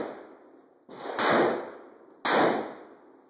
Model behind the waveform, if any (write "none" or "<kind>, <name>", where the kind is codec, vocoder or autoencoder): none